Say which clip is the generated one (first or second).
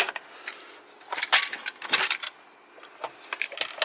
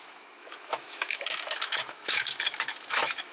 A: second